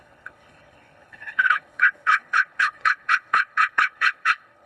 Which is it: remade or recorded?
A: remade